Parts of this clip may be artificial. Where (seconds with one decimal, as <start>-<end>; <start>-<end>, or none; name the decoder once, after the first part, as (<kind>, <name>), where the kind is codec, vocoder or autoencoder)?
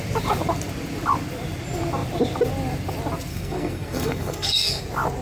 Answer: 3.3-4.8 (codec, SNAC)